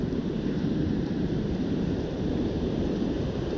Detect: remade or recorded remade